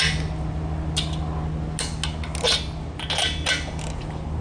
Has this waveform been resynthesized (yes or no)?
no